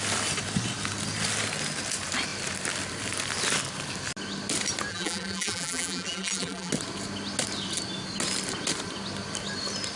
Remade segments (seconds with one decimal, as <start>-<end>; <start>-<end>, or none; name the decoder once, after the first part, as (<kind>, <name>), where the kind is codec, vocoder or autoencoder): 4.9-6.7 (vocoder, BigVGAN v2)